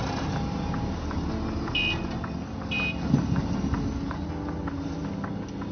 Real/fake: real